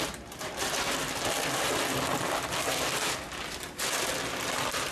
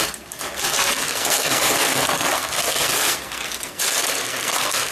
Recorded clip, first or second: first